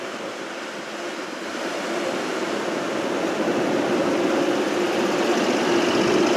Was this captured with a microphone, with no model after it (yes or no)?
yes